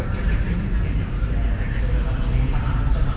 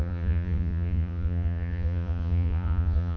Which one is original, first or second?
first